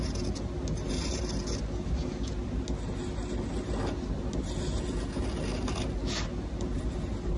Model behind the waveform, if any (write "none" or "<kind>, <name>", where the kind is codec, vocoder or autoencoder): none